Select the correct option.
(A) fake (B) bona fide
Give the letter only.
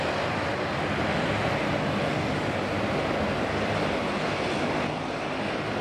B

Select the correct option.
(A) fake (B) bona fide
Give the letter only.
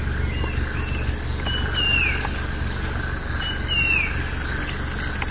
B